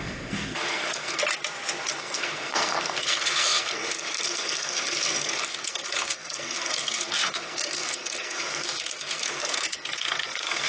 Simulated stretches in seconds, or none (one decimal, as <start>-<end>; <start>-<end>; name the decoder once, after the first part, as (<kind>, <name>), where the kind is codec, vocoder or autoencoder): 0.0-1.2 (codec, SNAC); 2.0-10.7